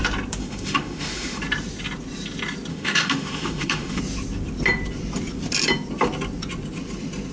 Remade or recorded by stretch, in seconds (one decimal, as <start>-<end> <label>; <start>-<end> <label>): 0.0-0.4 recorded; 0.4-1.4 remade; 1.4-2.7 recorded; 2.7-4.0 remade; 4.0-7.3 recorded